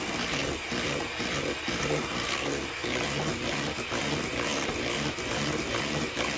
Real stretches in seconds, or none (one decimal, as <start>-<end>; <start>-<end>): 0.0-6.4